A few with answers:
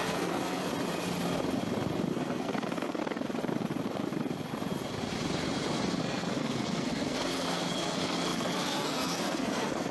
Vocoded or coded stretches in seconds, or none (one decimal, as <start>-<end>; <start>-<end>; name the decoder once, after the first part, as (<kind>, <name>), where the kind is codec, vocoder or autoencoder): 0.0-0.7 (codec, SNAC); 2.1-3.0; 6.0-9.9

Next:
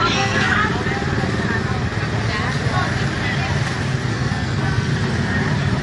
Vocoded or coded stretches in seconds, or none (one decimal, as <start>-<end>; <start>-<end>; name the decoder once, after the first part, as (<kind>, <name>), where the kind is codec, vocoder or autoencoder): 0.0-0.6 (codec, SNAC); 4.1-4.9

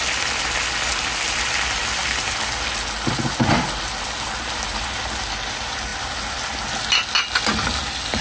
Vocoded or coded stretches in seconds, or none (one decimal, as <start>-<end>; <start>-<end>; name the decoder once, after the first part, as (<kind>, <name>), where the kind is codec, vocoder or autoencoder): none

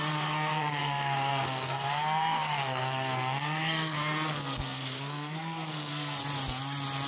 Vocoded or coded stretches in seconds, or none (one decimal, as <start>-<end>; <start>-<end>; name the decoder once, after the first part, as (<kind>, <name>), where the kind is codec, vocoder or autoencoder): 0.0-6.2 (codec, SNAC)